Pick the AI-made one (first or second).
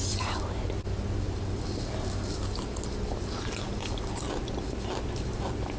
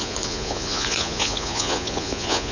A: second